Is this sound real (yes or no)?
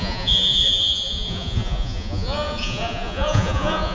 no